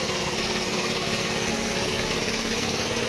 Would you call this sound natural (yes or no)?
no